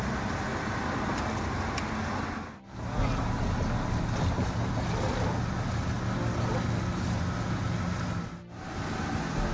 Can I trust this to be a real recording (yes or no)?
yes